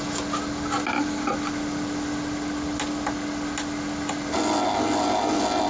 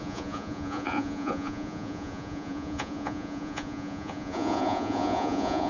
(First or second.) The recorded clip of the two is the first